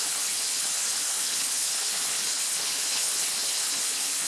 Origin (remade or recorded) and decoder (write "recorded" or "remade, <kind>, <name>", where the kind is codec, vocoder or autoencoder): remade, codec, HILCodec